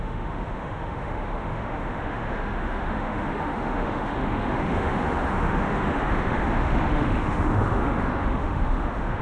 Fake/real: fake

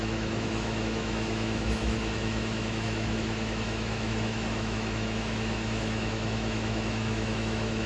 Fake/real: fake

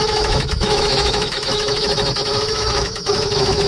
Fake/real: fake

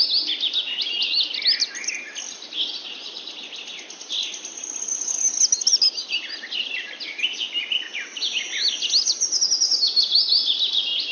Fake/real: real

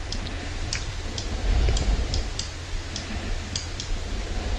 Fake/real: real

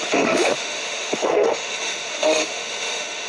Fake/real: fake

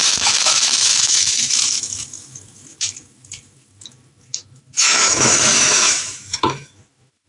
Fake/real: fake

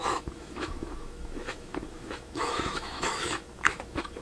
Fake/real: fake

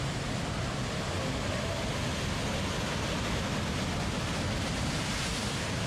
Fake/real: real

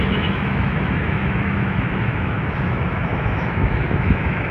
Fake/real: fake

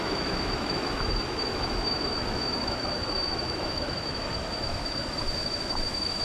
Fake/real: fake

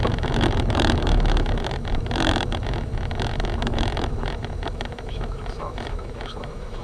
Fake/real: fake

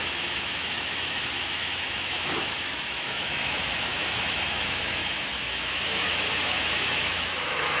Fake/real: fake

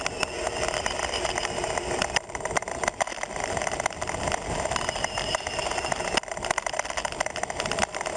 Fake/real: real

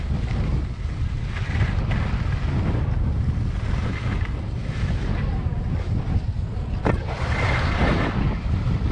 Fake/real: real